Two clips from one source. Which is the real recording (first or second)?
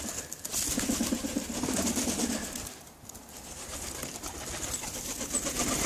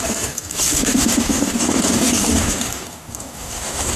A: first